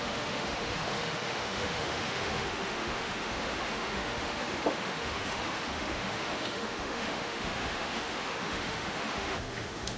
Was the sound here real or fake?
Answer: fake